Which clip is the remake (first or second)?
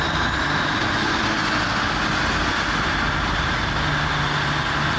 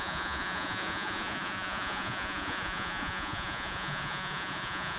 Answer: second